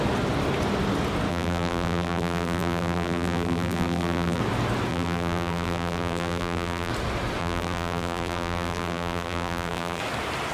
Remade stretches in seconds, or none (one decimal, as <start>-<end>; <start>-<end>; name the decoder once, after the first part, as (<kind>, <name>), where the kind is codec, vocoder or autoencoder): 1.3-4.4 (vocoder, BigVGAN v2); 4.9-6.9; 7.4-10.0